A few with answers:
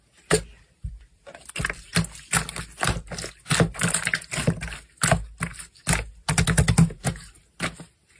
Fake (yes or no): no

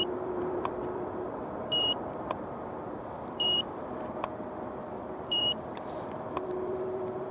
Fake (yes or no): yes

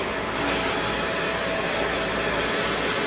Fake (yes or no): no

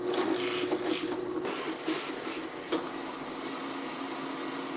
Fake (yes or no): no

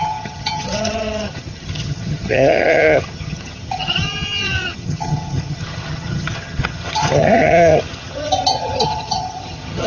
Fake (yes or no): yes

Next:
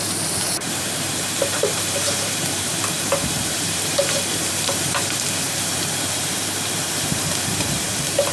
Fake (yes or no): yes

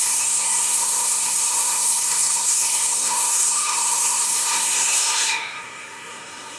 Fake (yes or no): yes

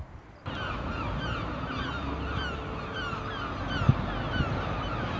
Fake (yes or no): no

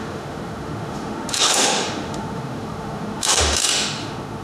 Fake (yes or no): yes